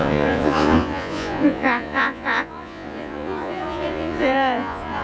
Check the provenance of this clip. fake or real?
fake